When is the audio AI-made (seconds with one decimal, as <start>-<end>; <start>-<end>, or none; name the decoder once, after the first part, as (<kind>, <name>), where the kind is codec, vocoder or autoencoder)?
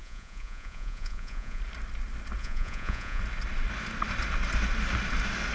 0.0-1.6 (vocoder, Vocos); 2.4-3.2